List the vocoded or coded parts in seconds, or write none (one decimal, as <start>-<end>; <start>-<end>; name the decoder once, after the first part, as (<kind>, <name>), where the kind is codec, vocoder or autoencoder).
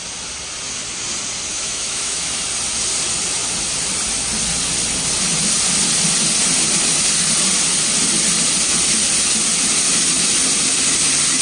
1.5-2.4 (autoencoder, DAC-VAE)